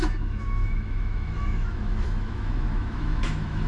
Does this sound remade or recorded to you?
remade